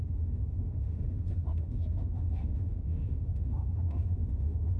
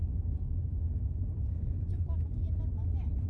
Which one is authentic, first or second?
second